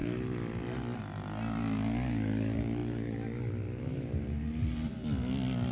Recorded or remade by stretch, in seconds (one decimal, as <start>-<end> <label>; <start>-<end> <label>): 0.0-5.7 recorded